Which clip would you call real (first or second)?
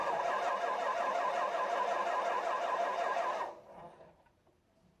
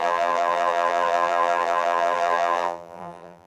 first